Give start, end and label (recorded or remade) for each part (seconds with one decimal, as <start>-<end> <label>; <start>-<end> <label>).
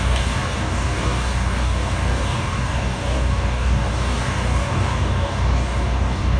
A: 0.0-6.4 remade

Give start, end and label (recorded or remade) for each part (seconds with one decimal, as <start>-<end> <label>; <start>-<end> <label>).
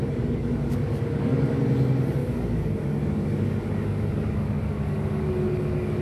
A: 0.0-1.6 remade; 1.6-2.2 recorded; 2.2-6.0 remade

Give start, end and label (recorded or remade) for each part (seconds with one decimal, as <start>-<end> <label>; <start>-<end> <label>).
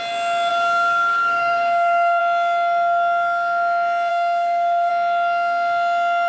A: 0.0-0.5 recorded; 0.5-2.2 remade; 2.2-4.1 recorded; 4.1-4.9 remade; 4.9-6.3 recorded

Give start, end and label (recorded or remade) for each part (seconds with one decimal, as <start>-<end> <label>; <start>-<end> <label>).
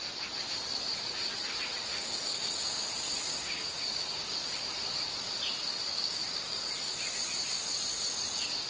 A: 0.0-1.9 recorded; 1.9-2.9 remade; 2.9-3.3 recorded; 3.3-4.6 remade; 4.6-5.9 recorded; 5.9-6.7 remade; 6.7-8.7 recorded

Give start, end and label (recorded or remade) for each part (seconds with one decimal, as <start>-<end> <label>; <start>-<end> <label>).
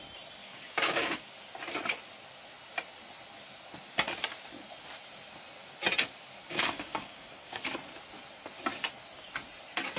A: 0.0-0.4 recorded; 0.4-1.2 remade; 1.2-6.4 recorded; 6.4-7.7 remade; 7.7-10.0 recorded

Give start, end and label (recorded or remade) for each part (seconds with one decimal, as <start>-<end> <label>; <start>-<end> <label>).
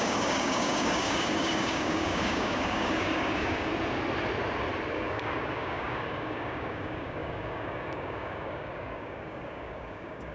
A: 0.0-3.7 remade; 3.7-4.9 recorded; 4.9-10.3 remade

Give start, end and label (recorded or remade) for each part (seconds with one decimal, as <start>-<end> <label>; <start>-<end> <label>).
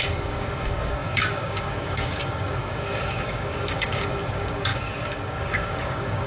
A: 0.0-6.3 remade